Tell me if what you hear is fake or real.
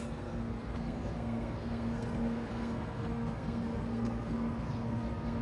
fake